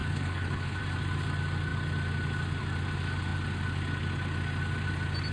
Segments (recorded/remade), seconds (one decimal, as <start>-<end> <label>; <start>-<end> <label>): 0.0-0.8 remade; 0.8-5.3 recorded